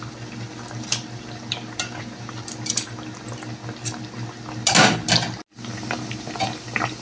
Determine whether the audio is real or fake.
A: real